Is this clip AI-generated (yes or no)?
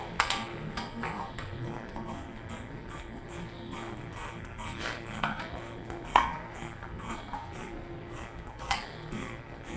yes